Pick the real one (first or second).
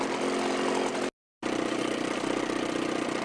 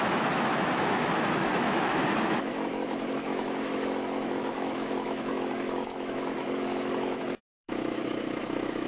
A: first